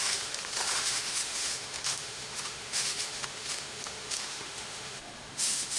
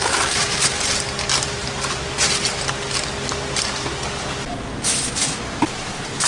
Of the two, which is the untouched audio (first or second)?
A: second